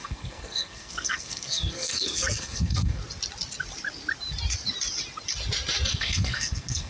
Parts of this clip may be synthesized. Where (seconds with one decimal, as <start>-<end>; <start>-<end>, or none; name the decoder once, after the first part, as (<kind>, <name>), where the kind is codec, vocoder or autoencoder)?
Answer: 0.0-3.0 (codec, SNAC); 5.9-6.9

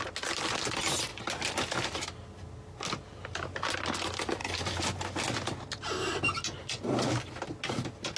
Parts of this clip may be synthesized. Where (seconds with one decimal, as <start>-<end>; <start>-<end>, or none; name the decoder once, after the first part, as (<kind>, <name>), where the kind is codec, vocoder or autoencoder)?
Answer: none

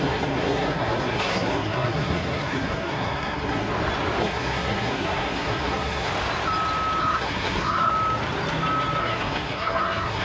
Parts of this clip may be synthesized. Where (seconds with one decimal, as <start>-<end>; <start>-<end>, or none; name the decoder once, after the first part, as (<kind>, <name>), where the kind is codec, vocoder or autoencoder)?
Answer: 0.0-3.7 (codec, SNAC); 4.2-6.1; 7.0-7.9; 9.0-10.2

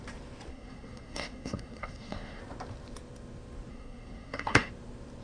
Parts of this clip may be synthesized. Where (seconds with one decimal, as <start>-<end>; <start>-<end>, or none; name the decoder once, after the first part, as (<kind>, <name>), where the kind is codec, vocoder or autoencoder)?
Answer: 0.5-2.4 (codec, SNAC); 3.7-4.7